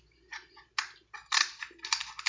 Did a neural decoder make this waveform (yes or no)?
no